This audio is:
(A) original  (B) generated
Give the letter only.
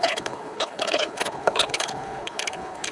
B